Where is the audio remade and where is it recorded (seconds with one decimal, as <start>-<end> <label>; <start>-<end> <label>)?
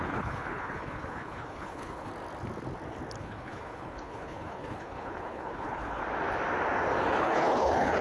0.0-2.1 remade; 2.1-3.2 recorded; 3.2-6.0 remade; 6.0-7.2 recorded; 7.2-8.0 remade